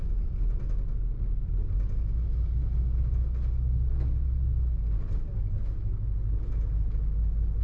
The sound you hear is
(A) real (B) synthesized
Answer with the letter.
A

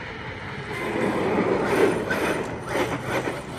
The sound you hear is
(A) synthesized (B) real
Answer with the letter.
B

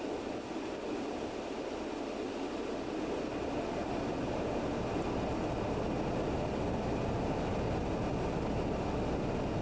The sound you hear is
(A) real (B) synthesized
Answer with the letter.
A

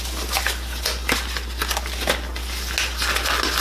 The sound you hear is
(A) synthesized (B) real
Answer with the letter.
B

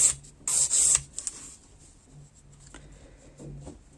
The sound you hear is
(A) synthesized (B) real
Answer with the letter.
B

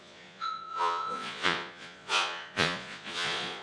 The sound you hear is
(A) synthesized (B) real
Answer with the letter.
A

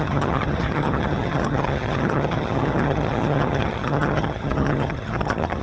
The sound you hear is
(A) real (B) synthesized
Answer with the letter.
B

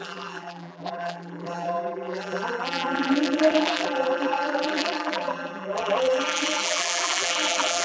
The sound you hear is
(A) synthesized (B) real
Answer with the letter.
A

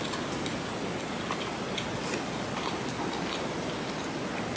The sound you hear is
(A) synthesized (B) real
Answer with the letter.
B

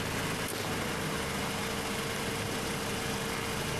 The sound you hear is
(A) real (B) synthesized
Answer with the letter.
A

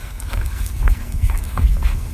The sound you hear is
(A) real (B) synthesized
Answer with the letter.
B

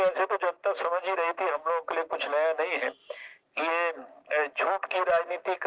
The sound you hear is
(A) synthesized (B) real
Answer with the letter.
B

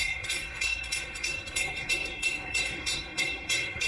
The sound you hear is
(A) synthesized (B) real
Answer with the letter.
A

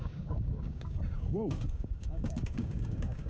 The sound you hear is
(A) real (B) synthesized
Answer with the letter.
B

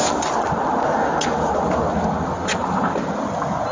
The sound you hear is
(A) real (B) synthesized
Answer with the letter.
A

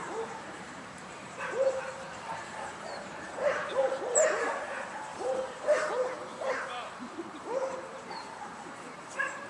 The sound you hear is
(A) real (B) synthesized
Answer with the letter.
B